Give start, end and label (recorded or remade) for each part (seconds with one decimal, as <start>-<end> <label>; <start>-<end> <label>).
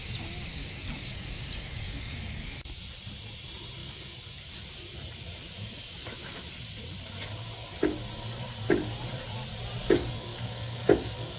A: 0.0-0.6 recorded; 0.6-2.6 remade; 2.6-3.8 recorded; 3.8-4.5 remade; 4.5-9.8 recorded; 9.8-11.4 remade